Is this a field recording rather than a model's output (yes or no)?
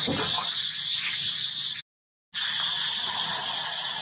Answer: yes